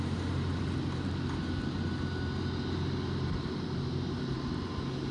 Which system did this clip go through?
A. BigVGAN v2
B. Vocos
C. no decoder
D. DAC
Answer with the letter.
C